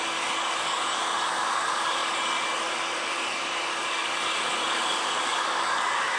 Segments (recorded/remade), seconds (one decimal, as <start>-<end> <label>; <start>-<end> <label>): 0.0-6.2 remade